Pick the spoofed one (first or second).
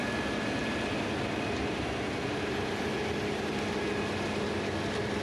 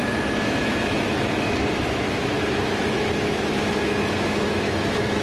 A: second